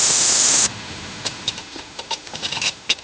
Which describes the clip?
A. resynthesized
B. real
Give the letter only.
A